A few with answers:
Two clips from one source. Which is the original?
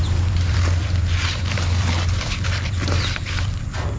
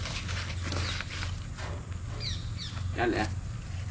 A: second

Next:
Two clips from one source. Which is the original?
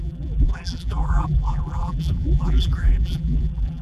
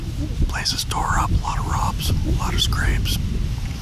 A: second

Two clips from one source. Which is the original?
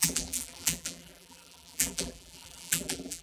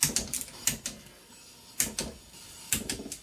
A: second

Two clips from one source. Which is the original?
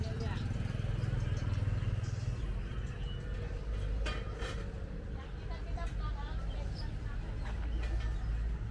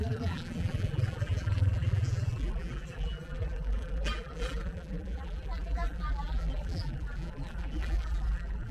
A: first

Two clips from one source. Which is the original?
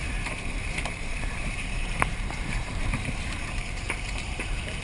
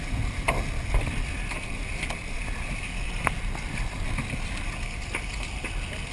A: second